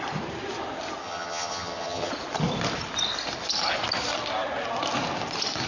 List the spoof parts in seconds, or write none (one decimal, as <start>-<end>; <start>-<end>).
1.0-2.1